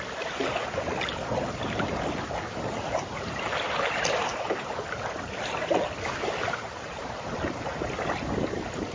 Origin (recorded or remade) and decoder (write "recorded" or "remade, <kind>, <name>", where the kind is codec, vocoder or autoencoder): recorded